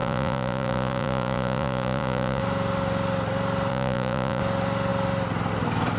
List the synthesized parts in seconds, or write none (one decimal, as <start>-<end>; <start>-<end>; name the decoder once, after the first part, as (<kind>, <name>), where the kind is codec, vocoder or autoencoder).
0.0-2.4 (vocoder, Vocos); 3.7-4.4